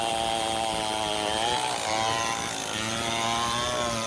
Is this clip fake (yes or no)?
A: no